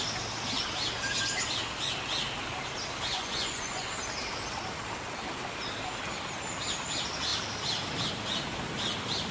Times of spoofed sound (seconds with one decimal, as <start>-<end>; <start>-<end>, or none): 3.1-3.9

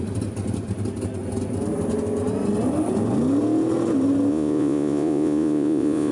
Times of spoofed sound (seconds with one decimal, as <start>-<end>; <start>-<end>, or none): 4.3-6.1

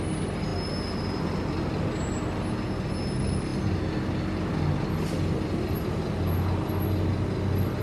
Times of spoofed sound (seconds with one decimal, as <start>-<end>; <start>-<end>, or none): none

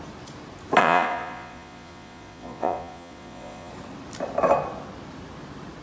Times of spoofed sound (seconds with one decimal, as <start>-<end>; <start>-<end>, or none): 0.8-3.7

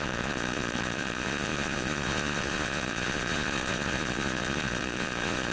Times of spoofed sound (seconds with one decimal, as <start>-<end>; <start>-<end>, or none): 0.0-5.5

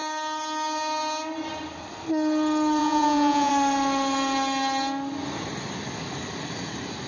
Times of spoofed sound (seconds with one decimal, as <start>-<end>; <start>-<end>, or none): 2.8-3.5

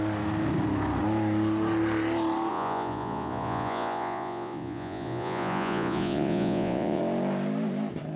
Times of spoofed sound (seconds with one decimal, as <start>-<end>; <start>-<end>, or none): 2.5-7.0